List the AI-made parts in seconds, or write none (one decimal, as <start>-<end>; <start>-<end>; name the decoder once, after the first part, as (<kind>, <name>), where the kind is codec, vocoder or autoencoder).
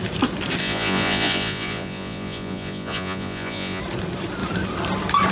0.6-3.8 (vocoder, Vocos)